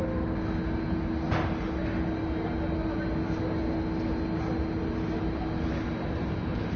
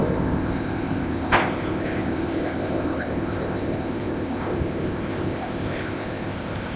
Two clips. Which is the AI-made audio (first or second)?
second